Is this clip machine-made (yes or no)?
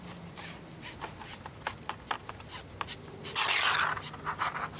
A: no